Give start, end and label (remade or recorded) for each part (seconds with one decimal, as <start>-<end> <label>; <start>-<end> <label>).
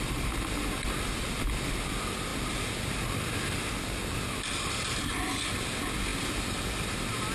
0.0-7.3 recorded